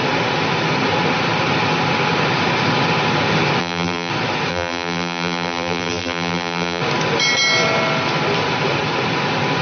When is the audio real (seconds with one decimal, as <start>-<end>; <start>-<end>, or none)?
0.0-3.6; 4.1-4.5; 6.8-9.6